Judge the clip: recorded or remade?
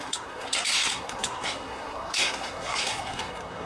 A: remade